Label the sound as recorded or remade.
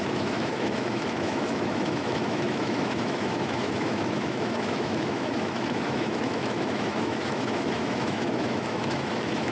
remade